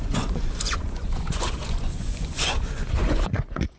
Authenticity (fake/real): fake